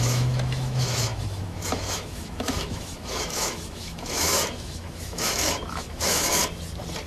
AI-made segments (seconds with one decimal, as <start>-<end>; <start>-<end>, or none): 0.0-6.4